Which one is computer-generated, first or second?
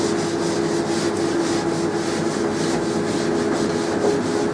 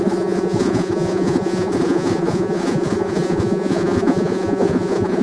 second